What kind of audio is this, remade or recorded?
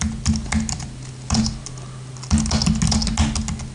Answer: recorded